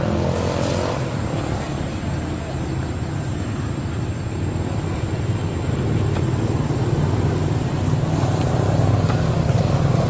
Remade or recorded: recorded